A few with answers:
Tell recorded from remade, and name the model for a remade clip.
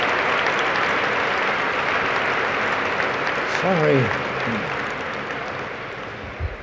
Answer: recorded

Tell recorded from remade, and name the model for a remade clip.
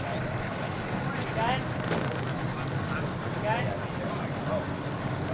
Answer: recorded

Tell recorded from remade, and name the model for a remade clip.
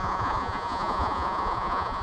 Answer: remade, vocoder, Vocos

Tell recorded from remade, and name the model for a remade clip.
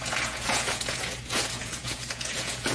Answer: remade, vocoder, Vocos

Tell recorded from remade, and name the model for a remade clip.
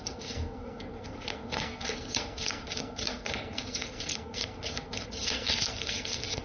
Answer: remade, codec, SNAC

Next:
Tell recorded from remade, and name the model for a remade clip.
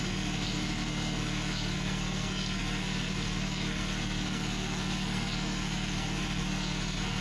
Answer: remade, codec, SNAC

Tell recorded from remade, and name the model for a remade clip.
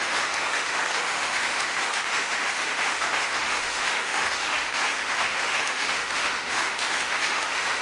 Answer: remade, autoencoder, DAC-VAE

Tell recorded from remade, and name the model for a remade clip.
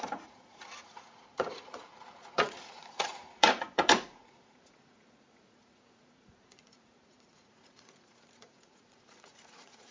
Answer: remade, vocoder, Vocos